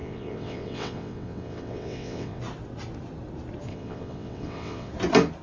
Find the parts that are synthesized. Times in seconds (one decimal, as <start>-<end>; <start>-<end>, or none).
0.0-2.4; 3.7-4.9